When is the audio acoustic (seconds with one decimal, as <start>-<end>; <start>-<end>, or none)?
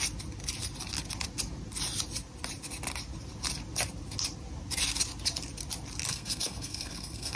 0.0-6.1